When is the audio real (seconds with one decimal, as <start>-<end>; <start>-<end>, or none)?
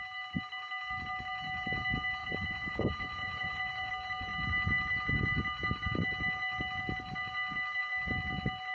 0.0-2.2; 3.9-8.7